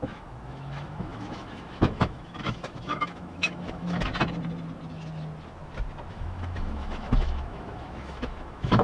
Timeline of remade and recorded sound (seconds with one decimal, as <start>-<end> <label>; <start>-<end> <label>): 0.0-4.1 remade; 4.1-6.1 recorded; 6.1-8.8 remade